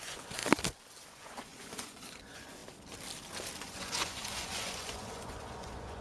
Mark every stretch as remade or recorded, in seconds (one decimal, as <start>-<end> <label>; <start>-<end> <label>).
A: 0.0-0.4 remade; 0.4-1.1 recorded; 1.1-2.6 remade; 2.6-3.6 recorded; 3.6-6.0 remade